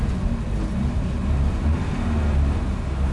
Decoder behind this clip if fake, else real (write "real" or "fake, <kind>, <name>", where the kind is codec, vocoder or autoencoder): real